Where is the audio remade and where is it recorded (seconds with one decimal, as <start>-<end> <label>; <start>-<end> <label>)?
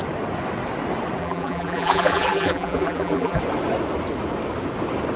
0.0-1.2 recorded; 1.2-3.4 remade; 3.4-5.2 recorded